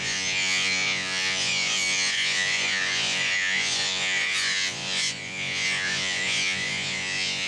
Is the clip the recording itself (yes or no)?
no